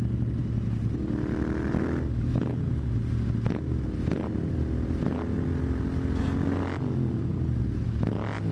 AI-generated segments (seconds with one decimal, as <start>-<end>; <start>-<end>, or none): none